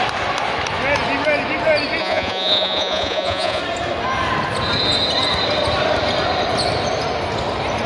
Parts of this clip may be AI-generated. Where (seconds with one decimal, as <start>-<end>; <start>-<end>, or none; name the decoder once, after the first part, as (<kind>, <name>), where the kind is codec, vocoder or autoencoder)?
2.0-3.6 (vocoder, Vocos)